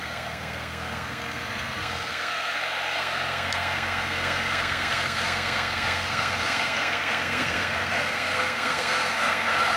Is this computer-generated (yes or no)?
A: yes